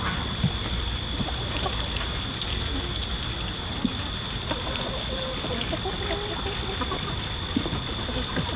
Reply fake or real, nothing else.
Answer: real